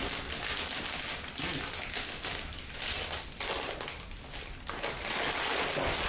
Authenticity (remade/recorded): recorded